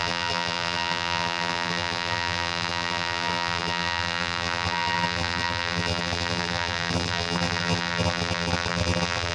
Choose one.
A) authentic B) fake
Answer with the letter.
B